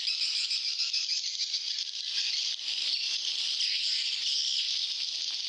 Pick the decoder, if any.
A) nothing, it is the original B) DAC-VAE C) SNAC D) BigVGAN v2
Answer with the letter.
A